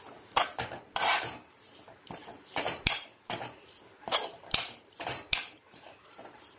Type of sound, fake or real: fake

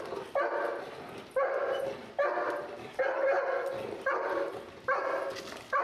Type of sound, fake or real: real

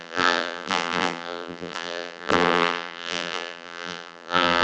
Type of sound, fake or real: fake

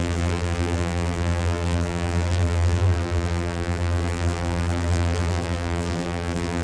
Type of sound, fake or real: fake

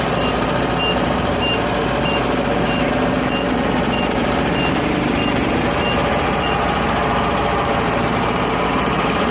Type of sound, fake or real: fake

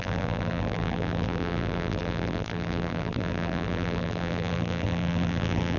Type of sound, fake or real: fake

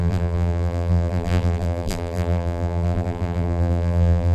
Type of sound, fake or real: fake